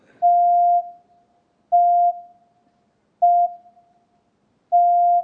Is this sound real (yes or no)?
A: yes